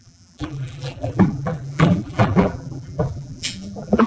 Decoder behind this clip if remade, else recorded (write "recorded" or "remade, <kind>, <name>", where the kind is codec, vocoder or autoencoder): remade, vocoder, BigVGAN v2